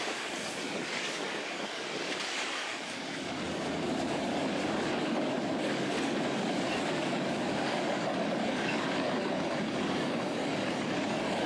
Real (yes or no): no